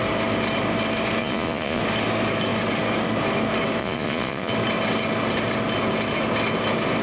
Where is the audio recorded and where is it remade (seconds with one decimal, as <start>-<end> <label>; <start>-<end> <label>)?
0.0-1.2 recorded; 1.2-1.8 remade; 1.8-3.8 recorded; 3.8-4.5 remade; 4.5-7.0 recorded